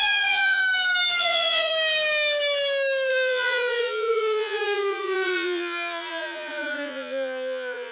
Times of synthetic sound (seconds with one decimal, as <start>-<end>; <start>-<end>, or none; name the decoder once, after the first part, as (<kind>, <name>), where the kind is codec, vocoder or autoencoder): 0.0-0.6 (vocoder, Vocos); 1.2-1.7; 3.1-7.9